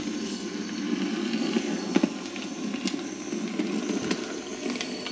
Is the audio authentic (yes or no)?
yes